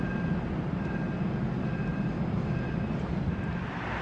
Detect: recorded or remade recorded